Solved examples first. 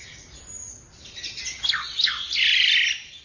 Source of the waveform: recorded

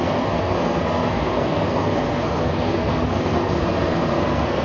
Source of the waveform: remade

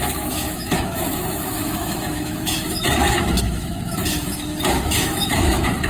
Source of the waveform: remade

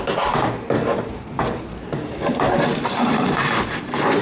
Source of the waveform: remade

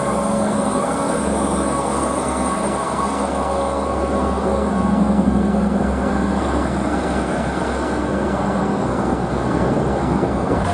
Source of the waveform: remade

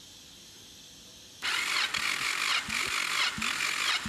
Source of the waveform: recorded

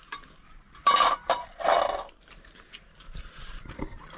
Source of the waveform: remade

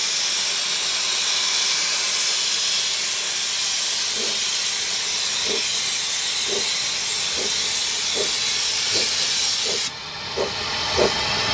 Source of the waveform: recorded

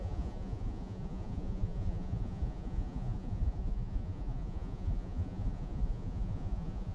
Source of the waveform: remade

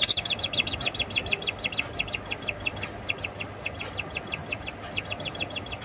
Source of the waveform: recorded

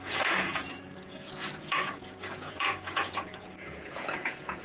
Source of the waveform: remade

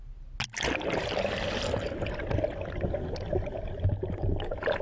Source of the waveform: recorded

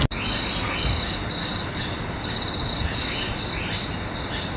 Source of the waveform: recorded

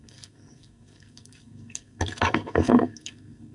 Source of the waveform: remade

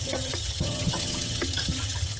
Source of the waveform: remade